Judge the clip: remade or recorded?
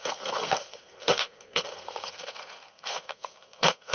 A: remade